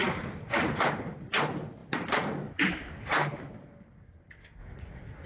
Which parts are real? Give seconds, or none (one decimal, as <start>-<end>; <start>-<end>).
0.0-4.6